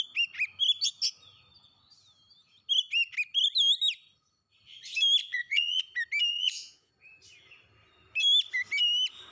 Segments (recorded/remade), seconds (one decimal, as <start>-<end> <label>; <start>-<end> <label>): 0.0-5.2 recorded; 5.2-5.8 remade; 5.8-6.3 recorded; 6.3-6.9 remade; 6.9-9.3 recorded